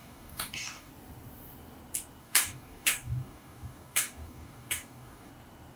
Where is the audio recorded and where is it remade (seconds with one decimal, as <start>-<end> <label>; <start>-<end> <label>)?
0.0-0.9 remade; 0.9-2.2 recorded; 2.2-5.3 remade; 5.3-5.8 recorded